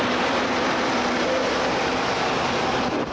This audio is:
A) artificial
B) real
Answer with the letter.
B